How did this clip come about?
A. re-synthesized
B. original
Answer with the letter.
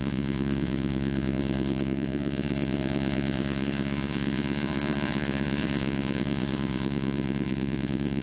A